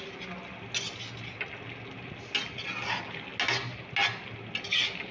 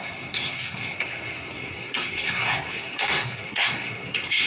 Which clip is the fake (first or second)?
second